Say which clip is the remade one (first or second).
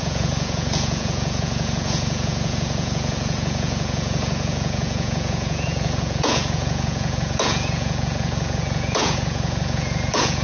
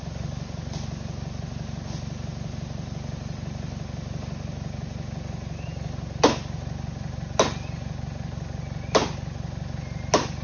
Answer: first